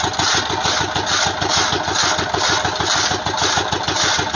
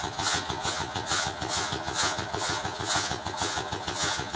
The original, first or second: first